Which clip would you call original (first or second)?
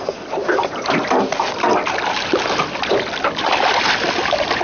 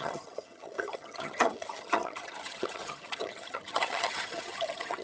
first